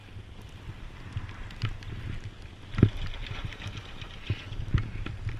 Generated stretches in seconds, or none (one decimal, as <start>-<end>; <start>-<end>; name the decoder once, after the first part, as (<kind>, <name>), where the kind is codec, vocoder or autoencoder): none